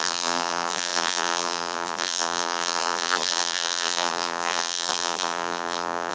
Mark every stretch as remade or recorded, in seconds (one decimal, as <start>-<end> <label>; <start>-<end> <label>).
0.0-6.1 remade